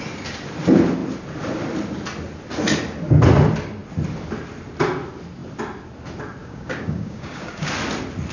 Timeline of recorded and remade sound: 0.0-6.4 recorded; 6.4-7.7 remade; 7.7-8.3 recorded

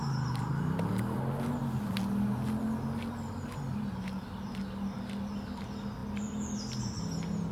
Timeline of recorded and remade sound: 0.0-7.5 recorded

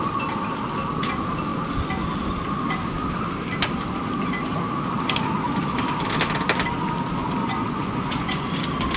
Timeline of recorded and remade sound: 0.0-7.4 recorded; 7.4-8.5 remade; 8.5-9.0 recorded

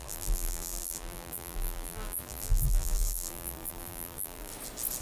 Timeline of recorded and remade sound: 0.0-4.5 remade; 4.5-5.0 recorded